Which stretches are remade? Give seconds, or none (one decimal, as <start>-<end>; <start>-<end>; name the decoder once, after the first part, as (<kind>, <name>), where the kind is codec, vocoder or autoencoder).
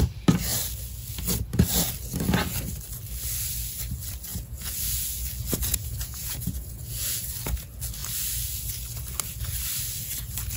4.3-4.8 (vocoder, Vocos); 5.7-7.2